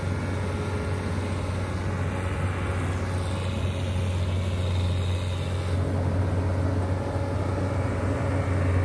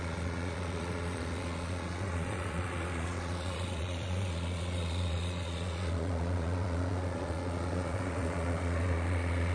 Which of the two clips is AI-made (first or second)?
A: second